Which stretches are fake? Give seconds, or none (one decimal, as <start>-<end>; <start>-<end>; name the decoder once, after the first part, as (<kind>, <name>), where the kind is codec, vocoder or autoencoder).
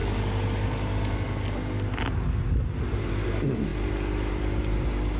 none